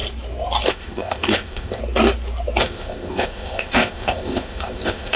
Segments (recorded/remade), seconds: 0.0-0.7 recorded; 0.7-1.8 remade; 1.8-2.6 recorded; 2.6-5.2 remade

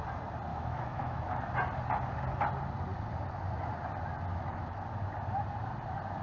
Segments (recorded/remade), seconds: 0.0-0.5 recorded; 0.5-1.5 remade; 1.5-4.3 recorded; 4.3-4.8 remade; 4.8-6.2 recorded

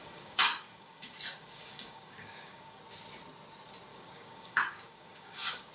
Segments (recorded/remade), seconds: 0.0-2.8 remade; 2.8-3.9 recorded; 3.9-5.7 remade

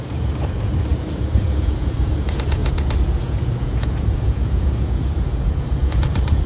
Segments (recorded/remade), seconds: 0.0-6.5 remade